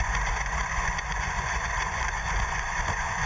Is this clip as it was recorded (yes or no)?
no